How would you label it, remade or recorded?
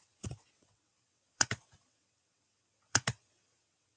remade